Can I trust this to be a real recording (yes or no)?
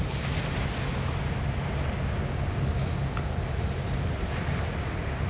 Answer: yes